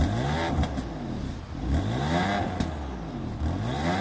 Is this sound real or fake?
real